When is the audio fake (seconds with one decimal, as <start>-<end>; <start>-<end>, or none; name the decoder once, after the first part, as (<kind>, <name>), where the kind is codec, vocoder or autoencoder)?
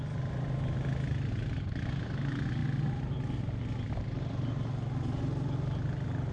none